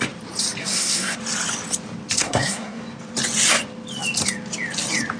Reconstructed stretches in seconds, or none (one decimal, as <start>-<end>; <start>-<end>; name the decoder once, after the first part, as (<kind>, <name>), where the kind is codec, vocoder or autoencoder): 0.6-1.2 (codec, SNAC); 2.2-2.8